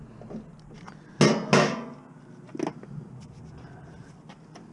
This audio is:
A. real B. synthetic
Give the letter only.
A